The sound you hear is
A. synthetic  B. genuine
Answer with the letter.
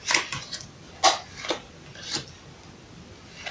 B